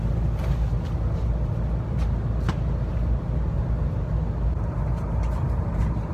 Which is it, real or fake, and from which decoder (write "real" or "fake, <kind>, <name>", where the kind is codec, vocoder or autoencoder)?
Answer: real